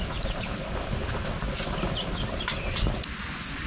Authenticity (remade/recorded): recorded